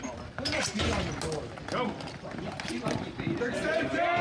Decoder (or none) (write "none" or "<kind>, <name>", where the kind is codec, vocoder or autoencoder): none